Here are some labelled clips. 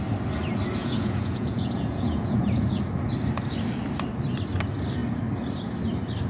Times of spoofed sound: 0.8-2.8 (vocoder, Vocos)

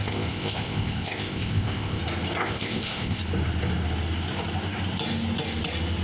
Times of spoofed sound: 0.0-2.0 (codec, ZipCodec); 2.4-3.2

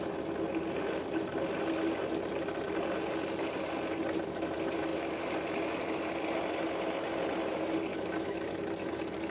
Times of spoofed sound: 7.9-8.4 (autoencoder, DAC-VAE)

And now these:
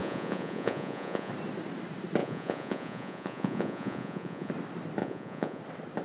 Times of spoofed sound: 0.0-1.3 (vocoder, Vocos); 2.2-4.5; 5.0-5.6